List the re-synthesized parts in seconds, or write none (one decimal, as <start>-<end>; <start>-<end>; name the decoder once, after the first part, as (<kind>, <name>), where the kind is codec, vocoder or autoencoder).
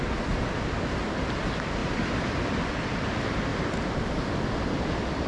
1.8-2.7 (vocoder, BigVGAN v2); 3.5-4.3